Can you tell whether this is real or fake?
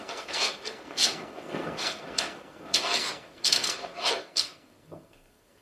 fake